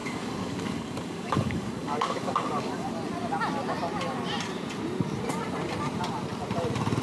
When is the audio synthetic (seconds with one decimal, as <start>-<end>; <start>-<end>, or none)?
0.0-2.9